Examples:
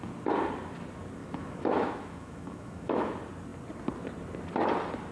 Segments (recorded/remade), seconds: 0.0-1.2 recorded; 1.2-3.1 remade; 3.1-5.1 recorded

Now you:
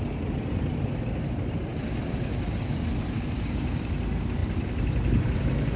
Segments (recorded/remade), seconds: 0.0-5.8 recorded

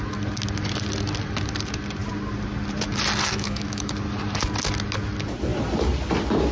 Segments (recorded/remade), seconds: 0.0-3.3 recorded; 3.3-3.9 remade; 3.9-6.5 recorded